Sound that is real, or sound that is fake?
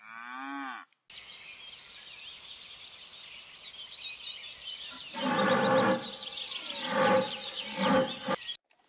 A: real